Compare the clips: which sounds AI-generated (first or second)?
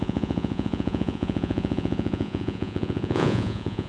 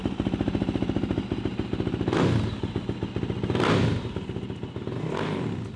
first